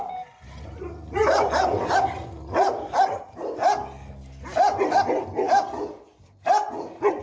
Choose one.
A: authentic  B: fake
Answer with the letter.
A